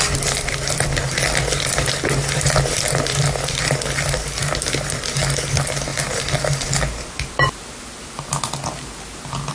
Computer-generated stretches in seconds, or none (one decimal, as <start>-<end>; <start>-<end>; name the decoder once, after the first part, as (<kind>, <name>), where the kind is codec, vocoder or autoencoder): none